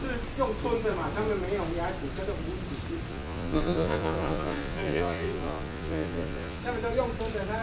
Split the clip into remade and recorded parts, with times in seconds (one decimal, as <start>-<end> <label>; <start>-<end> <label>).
0.0-3.1 recorded; 3.1-6.6 remade; 6.6-7.6 recorded